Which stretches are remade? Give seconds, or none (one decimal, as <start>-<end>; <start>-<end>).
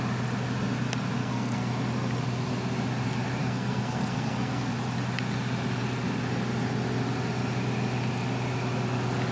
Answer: 1.2-1.7; 3.4-4.7